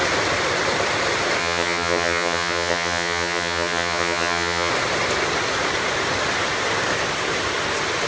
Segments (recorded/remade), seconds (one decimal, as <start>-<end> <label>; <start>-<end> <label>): 0.0-1.4 recorded; 1.4-4.7 remade; 4.7-8.1 recorded